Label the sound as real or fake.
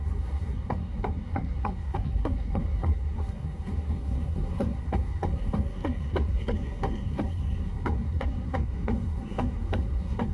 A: fake